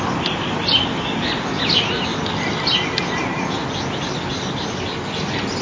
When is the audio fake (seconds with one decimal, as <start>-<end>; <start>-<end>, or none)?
none